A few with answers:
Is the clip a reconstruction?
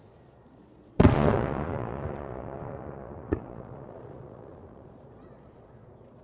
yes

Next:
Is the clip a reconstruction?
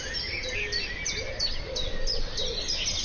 no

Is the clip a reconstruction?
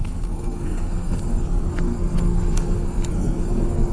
yes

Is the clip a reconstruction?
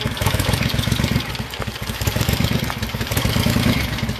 yes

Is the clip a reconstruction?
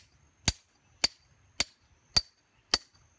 no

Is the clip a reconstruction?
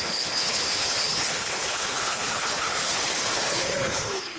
yes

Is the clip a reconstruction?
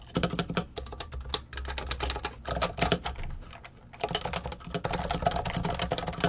no